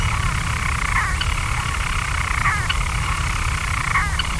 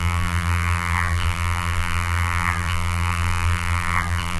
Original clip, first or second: first